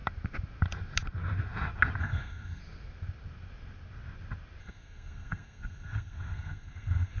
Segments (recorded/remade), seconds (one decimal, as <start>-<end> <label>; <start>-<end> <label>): 0.0-2.0 recorded; 2.0-2.6 remade; 2.6-4.6 recorded; 4.6-7.2 remade